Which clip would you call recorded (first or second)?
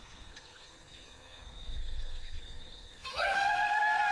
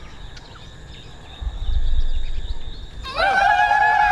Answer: second